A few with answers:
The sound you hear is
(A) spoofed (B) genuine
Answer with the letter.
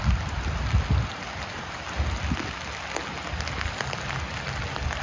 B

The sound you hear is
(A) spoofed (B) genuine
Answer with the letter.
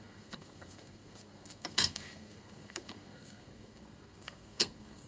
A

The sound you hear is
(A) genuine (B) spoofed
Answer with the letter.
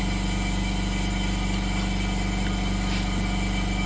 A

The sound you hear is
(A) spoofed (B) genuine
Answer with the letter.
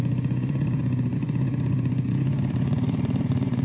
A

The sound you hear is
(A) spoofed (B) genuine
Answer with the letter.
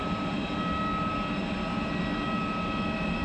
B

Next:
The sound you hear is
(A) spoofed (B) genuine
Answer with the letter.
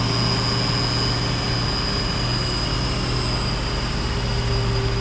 B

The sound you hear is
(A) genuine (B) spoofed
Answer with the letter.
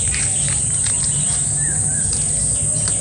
A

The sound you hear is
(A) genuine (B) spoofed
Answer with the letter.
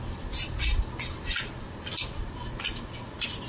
A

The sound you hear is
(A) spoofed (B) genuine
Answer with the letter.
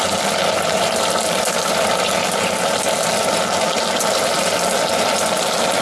B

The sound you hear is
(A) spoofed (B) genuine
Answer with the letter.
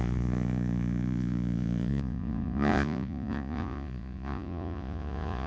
A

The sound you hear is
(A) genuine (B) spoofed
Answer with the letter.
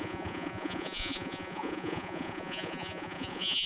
B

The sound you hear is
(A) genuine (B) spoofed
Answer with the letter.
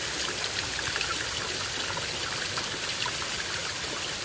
A